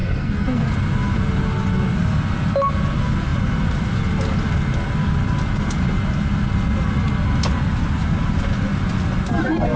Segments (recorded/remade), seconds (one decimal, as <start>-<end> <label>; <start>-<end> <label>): 0.0-0.7 remade; 0.7-9.8 recorded